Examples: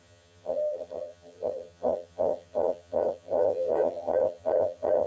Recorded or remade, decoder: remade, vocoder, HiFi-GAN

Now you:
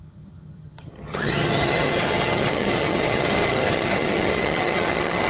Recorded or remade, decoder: remade, vocoder, HiFi-GAN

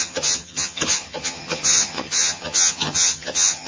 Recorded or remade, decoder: remade, vocoder, HiFi-GAN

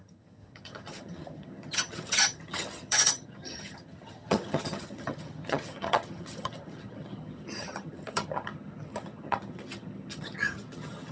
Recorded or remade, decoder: remade, vocoder, HiFi-GAN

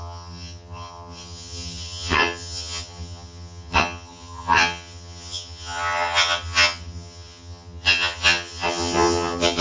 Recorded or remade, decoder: remade, vocoder, HiFi-GAN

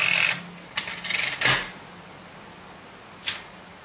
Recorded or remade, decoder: recorded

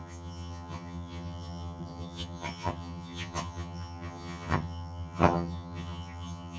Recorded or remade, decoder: remade, vocoder, HiFi-GAN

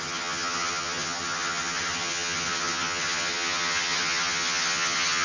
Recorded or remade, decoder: remade, vocoder, HiFi-GAN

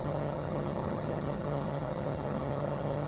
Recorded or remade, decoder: remade, vocoder, HiFi-GAN